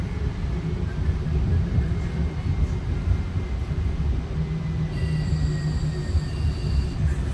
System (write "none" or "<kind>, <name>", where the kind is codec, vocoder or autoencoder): none